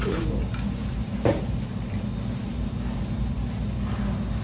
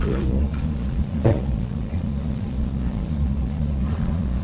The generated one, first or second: second